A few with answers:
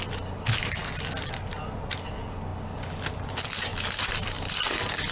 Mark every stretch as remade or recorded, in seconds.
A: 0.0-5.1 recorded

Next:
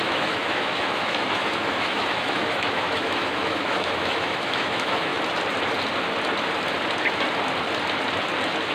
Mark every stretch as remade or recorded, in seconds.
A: 0.0-5.1 remade; 5.1-8.7 recorded

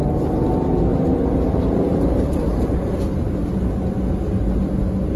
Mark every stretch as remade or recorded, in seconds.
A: 0.0-0.9 recorded; 0.9-3.0 remade; 3.0-5.2 recorded

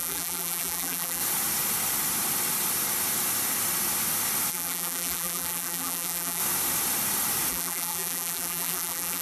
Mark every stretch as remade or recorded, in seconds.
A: 0.0-1.2 remade; 1.2-4.5 recorded; 4.5-6.4 remade; 6.4-7.5 recorded; 7.5-9.2 remade

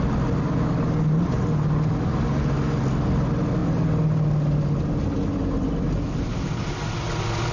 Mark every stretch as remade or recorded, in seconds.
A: 0.0-7.5 recorded

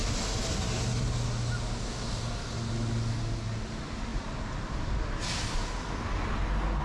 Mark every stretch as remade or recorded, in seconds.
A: 0.0-6.8 recorded

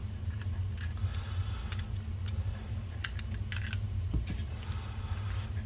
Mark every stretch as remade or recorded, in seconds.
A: 0.0-5.7 recorded

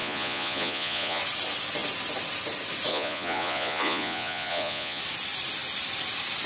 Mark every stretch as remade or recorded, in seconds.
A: 0.0-1.2 remade; 1.2-2.9 recorded; 2.9-5.0 remade; 5.0-6.5 recorded